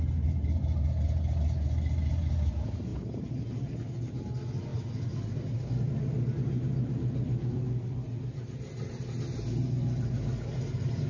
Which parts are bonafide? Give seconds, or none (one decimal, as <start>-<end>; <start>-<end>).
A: 0.0-11.1